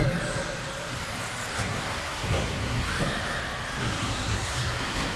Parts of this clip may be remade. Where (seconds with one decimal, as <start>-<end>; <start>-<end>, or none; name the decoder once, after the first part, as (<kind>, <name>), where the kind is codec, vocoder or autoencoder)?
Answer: 1.5-2.9 (codec, SNAC); 3.8-5.2